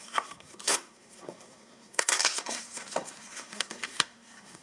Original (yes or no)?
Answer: no